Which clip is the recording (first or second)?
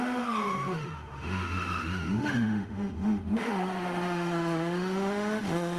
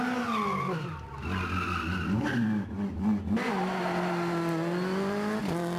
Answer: second